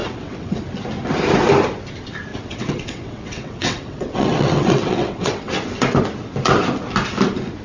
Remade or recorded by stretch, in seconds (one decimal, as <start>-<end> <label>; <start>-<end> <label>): 0.0-0.6 remade; 0.6-2.3 recorded; 2.3-5.5 remade; 5.5-7.6 recorded